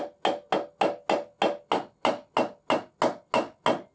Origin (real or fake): real